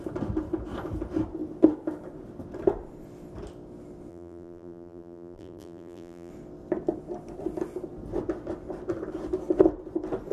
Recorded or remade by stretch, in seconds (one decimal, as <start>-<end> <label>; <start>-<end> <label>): 0.0-4.1 recorded; 4.1-6.3 remade; 6.3-10.3 recorded